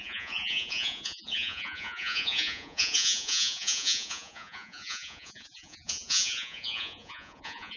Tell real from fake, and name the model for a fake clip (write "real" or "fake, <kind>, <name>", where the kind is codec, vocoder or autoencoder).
fake, vocoder, Vocos